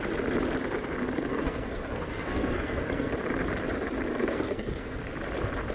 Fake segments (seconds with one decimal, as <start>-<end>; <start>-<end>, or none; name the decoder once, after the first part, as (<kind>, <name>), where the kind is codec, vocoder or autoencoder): 1.3-3.1 (codec, SNAC); 4.1-5.0